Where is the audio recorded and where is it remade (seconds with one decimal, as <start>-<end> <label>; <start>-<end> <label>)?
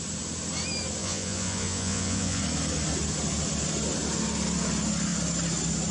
0.0-1.0 recorded; 1.0-2.4 remade; 2.4-5.9 recorded